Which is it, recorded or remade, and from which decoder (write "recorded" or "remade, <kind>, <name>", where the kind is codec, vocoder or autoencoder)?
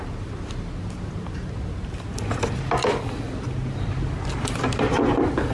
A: recorded